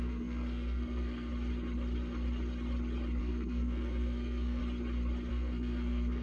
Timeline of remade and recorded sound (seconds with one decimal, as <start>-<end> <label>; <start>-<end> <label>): 0.0-1.3 remade; 1.3-3.2 recorded; 3.2-4.6 remade; 4.6-5.3 recorded; 5.3-6.2 remade